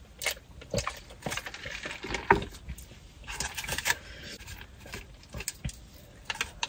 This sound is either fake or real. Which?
real